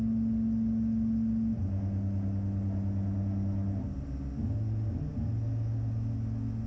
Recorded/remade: recorded